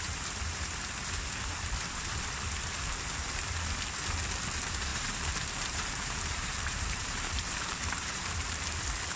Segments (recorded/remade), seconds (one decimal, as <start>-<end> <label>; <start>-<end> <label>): 0.0-4.9 recorded; 4.9-8.6 remade; 8.6-9.2 recorded